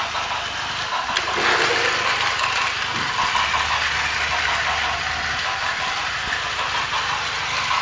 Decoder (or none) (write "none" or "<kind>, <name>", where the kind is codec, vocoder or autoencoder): none